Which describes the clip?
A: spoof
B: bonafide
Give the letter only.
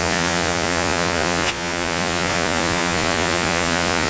A